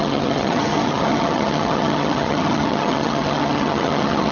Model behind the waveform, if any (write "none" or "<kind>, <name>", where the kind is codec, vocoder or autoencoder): vocoder, HiFi-GAN